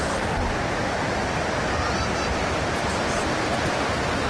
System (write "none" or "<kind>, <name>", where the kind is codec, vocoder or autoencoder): none